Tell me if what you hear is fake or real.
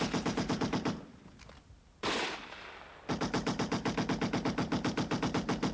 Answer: real